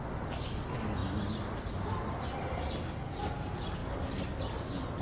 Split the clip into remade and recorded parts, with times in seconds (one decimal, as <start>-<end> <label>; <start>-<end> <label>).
0.0-3.8 recorded; 3.8-4.4 remade; 4.4-5.0 recorded